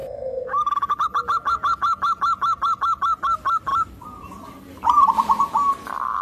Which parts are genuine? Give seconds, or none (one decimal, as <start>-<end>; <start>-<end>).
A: 0.0-3.7; 5.4-6.2